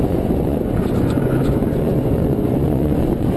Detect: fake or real fake